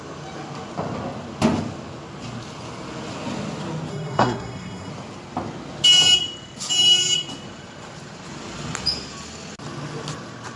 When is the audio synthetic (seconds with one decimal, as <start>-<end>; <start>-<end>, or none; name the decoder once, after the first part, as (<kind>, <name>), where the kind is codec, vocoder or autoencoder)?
3.9-4.9 (codec, SNAC)